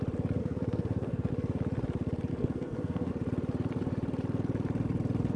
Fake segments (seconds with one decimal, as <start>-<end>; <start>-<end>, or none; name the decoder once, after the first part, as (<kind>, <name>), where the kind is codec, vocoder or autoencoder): 0.4-1.3 (codec, SNAC); 2.3-3.1